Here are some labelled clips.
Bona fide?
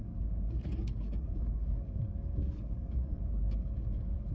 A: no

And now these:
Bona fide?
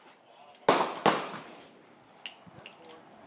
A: yes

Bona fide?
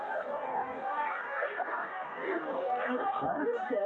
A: no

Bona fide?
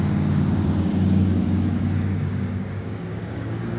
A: no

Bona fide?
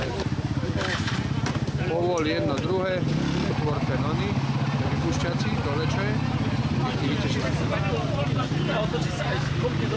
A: yes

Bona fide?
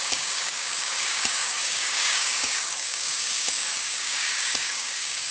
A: no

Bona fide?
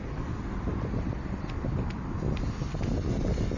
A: yes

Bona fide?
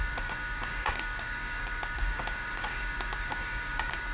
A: no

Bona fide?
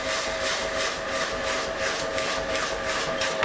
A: yes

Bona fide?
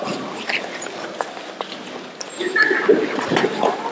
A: yes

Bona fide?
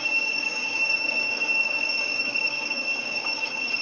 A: no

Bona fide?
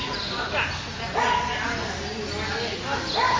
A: yes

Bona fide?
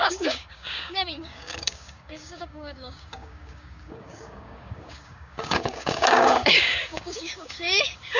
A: no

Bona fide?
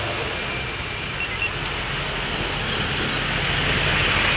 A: yes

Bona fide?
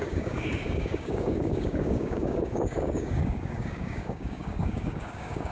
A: no